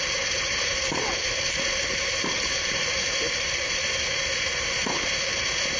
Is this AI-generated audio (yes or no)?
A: yes